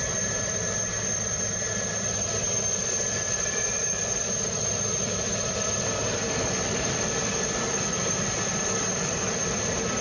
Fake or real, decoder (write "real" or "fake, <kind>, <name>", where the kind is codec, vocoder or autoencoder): fake, vocoder, BigVGAN v2